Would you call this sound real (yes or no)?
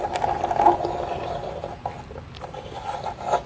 yes